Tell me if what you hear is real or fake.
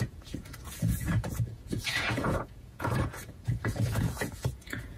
fake